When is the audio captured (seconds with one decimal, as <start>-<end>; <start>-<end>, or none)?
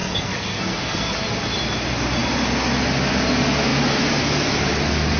1.1-5.2